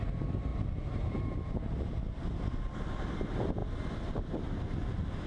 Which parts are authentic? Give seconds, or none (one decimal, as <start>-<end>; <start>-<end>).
none